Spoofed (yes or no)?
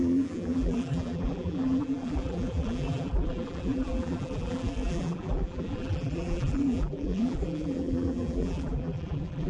yes